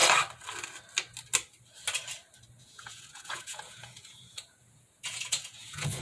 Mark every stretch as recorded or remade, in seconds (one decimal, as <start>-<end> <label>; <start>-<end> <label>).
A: 0.0-2.6 recorded; 2.6-6.0 remade